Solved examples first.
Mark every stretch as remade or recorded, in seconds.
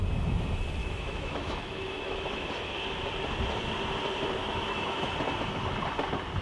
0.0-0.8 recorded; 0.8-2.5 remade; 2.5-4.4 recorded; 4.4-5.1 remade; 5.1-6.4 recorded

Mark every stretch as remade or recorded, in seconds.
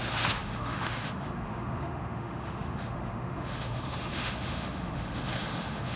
0.0-6.0 remade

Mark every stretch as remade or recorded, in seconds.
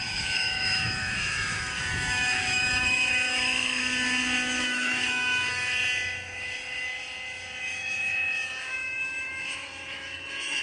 0.0-3.8 remade; 3.8-4.6 recorded; 4.6-5.7 remade; 5.7-7.6 recorded; 7.6-10.6 remade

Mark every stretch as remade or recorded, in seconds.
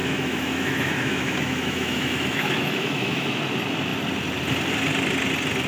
0.0-3.4 remade; 3.4-5.7 recorded